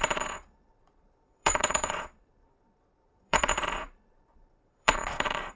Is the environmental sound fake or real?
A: fake